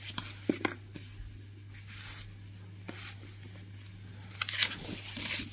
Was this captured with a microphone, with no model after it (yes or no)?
yes